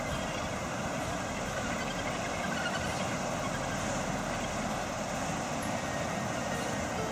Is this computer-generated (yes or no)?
no